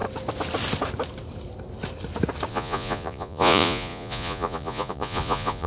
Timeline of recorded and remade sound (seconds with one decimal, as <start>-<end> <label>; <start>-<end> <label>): 0.0-2.5 recorded; 2.5-5.7 remade